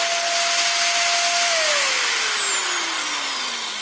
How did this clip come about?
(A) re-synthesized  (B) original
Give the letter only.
B